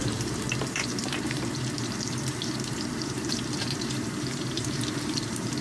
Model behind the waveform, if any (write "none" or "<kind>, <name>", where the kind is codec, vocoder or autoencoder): vocoder, BigVGAN v2